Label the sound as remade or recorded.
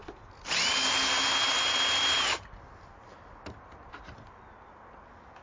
recorded